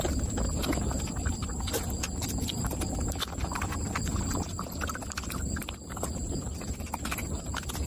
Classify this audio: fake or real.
real